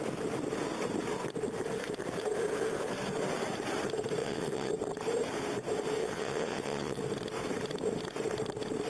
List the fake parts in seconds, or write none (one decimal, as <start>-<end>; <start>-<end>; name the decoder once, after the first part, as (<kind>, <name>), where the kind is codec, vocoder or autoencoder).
4.2-4.7 (vocoder, WaveNeXt); 6.0-7.0